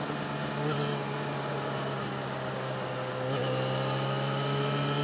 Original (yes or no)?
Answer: yes